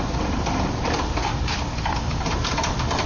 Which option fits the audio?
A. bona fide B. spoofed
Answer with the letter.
A